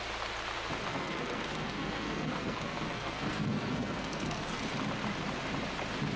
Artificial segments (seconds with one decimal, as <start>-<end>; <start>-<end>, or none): 0.9-4.6